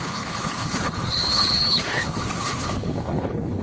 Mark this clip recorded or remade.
remade